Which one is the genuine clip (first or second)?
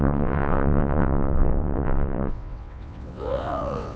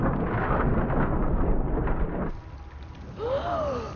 second